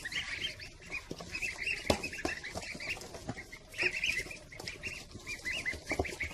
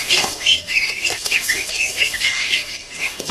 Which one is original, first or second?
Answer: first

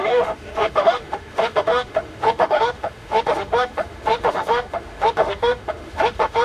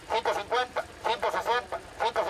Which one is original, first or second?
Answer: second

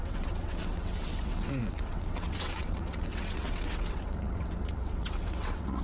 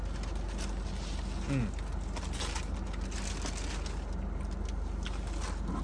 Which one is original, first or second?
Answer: second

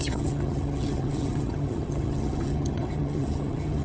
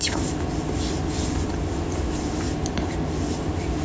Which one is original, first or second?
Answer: second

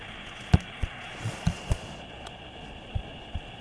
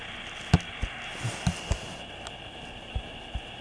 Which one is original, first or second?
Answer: second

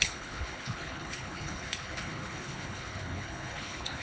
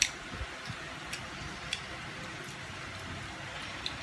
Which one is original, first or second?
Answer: second